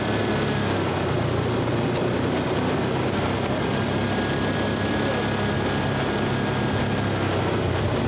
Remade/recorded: recorded